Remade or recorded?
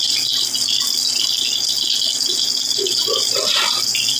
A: recorded